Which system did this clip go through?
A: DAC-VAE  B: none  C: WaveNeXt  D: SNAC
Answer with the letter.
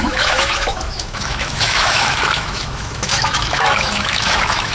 A